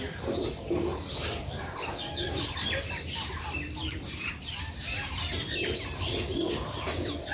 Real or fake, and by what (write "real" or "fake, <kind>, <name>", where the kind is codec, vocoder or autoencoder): real